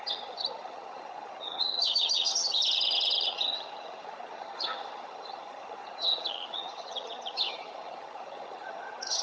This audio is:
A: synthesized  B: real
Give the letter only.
A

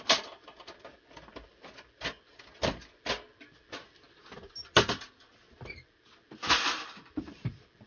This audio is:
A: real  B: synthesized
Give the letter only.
A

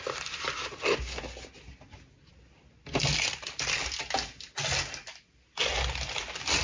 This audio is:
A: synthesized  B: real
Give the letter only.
B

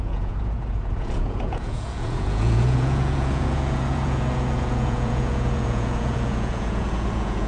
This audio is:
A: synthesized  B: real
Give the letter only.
A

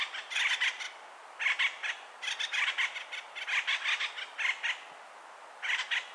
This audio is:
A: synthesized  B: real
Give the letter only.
B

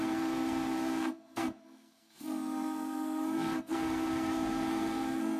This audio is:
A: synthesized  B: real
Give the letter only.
A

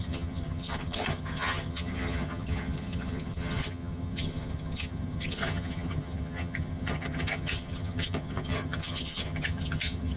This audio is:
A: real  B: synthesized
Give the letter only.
B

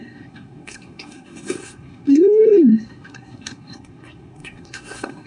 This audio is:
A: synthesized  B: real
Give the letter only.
A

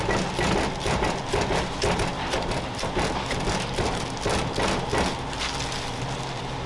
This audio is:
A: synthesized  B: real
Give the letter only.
B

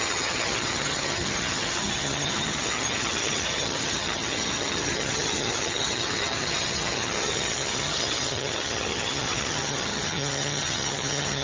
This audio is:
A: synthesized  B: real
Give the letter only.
A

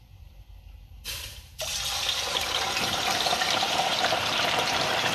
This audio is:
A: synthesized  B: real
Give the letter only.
A